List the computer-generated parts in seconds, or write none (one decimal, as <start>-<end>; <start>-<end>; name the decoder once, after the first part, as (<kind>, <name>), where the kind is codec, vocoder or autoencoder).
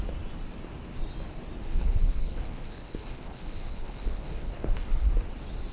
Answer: 1.7-5.1 (codec, HILCodec)